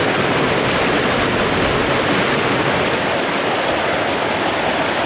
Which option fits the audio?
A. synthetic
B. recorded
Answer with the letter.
B